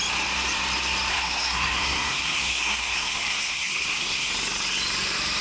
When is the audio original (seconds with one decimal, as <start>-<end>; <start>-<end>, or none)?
0.0-1.1; 4.3-5.4